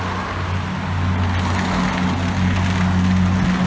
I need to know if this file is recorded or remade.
recorded